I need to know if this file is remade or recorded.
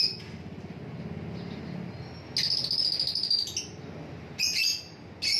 recorded